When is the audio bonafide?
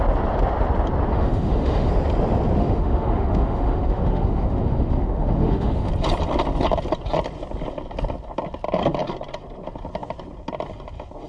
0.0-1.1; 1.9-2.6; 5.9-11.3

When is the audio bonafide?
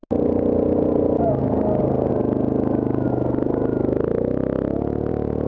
0.0-5.5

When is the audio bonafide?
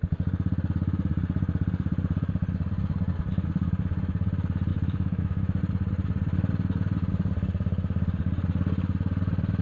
0.0-4.7; 5.6-9.6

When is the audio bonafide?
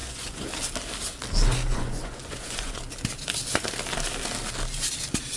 0.5-1.7; 2.8-5.4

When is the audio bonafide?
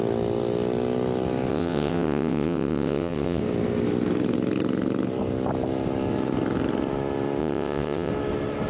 0.0-1.5; 3.4-7.4; 8.1-8.7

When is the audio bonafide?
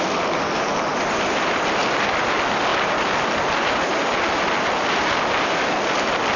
0.0-6.4